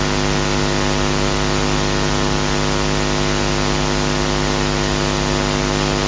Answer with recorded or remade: recorded